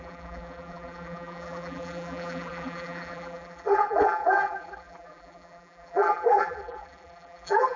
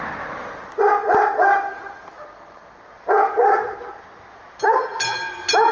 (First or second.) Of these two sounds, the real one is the second